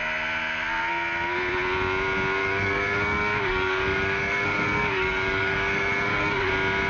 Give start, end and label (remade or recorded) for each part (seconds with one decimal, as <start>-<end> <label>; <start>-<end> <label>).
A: 0.0-2.4 recorded; 2.4-6.5 remade; 6.5-6.9 recorded